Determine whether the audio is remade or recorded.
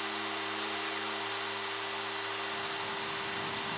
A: recorded